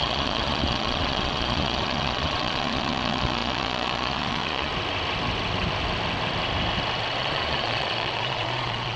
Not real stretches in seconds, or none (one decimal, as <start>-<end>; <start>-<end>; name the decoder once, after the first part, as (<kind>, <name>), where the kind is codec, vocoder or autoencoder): 0.0-4.7 (vocoder, Vocos); 7.2-9.0